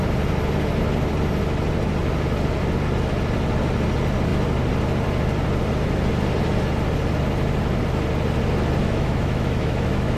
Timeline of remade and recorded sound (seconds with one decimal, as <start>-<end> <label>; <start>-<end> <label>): 0.0-8.8 recorded; 8.8-10.2 remade